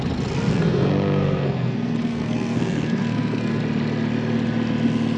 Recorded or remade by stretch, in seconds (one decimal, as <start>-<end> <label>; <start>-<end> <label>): 0.0-0.5 recorded; 0.5-3.6 remade; 3.6-5.2 recorded